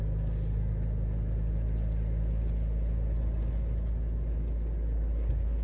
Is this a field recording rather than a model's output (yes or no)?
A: yes